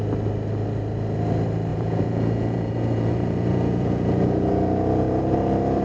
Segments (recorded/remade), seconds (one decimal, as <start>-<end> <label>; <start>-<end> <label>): 0.0-1.7 recorded; 1.7-5.2 remade; 5.2-5.8 recorded